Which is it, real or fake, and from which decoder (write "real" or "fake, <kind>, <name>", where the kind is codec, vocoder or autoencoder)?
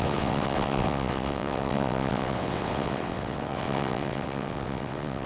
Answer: fake, vocoder, WaveNeXt